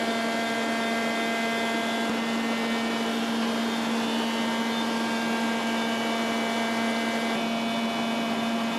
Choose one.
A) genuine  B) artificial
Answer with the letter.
A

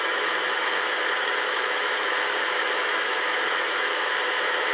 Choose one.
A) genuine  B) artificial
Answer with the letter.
B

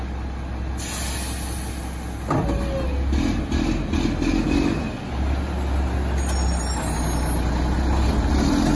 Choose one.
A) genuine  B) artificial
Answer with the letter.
A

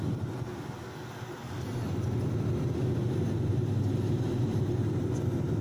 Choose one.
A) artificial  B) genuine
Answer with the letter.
B